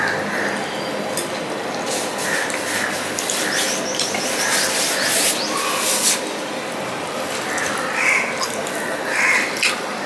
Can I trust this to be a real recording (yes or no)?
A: yes